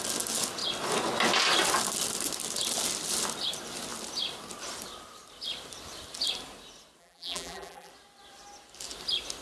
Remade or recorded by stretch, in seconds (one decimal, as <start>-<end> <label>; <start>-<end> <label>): 0.0-7.0 recorded; 7.0-7.9 remade; 7.9-9.4 recorded